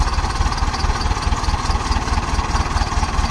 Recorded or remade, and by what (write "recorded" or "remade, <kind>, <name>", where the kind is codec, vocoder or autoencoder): recorded